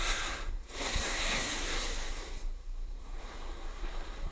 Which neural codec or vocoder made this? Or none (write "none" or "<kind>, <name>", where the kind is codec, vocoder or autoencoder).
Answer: codec, SNAC